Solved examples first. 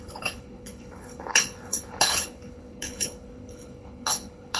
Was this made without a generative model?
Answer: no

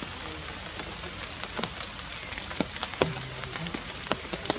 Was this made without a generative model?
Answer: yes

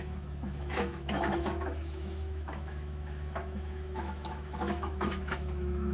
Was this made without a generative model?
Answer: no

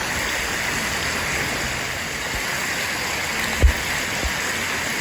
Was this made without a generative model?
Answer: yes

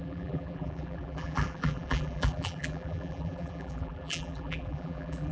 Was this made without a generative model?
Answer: no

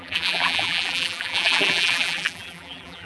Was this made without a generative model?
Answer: no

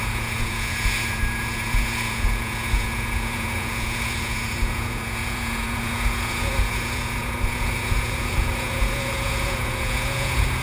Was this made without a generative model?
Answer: no